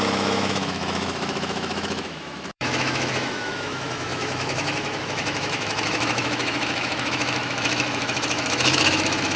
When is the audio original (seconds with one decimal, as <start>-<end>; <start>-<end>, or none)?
none